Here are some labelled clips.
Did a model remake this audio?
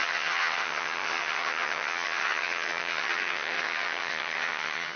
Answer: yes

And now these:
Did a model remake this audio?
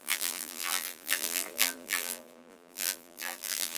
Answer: yes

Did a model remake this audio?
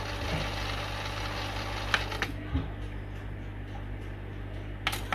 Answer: no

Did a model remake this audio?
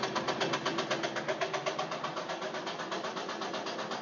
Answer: no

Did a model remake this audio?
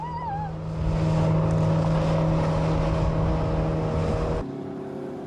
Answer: no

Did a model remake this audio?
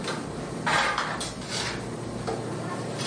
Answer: no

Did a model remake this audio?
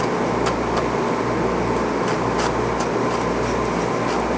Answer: no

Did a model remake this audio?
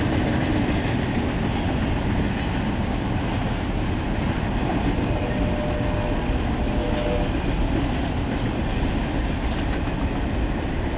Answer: no